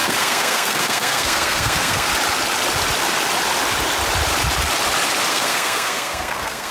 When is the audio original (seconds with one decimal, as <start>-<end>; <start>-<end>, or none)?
2.1-5.3